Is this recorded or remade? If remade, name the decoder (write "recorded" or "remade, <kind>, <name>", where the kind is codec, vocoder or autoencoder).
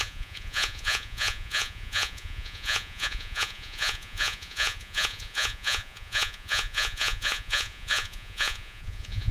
remade, vocoder, Vocos